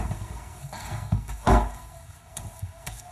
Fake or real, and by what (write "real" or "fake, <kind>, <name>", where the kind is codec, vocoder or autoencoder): fake, codec, SNAC